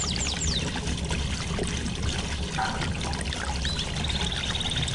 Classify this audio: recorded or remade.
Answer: recorded